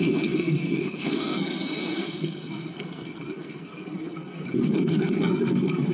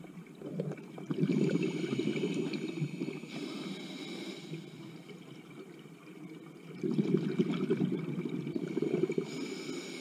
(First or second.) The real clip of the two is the second